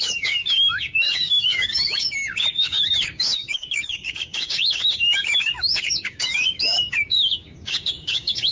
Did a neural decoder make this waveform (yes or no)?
yes